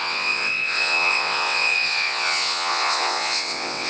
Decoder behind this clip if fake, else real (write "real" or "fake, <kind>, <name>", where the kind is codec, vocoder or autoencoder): fake, vocoder, WaveNeXt